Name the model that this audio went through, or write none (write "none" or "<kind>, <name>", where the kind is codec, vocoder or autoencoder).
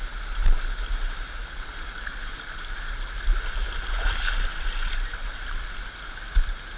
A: none